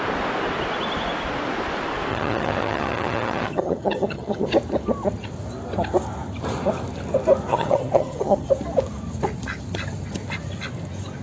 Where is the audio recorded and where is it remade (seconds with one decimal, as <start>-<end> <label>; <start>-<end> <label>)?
0.0-2.1 recorded; 2.1-4.5 remade; 4.5-7.5 recorded; 7.5-8.5 remade; 8.5-11.2 recorded